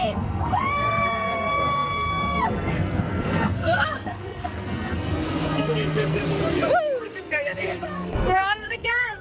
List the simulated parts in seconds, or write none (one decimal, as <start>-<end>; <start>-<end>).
0.0-6.2; 7.0-9.2